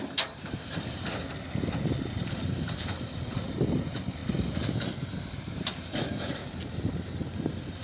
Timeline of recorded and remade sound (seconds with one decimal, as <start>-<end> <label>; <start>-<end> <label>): 0.0-1.2 remade; 1.2-2.1 recorded; 2.1-6.4 remade; 6.4-7.8 recorded